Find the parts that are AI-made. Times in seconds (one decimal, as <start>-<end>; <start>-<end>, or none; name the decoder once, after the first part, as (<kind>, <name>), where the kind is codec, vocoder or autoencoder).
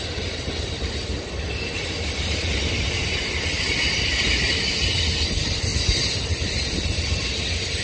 none